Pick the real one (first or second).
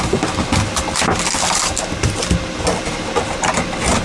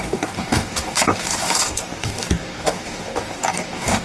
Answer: first